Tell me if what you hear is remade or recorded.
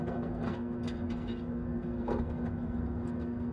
remade